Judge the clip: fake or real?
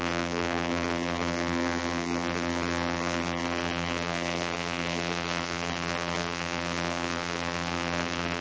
fake